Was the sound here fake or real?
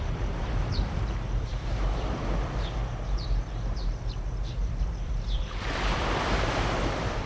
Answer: fake